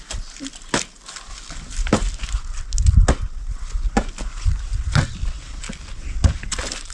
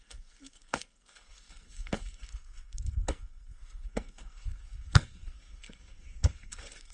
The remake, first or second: second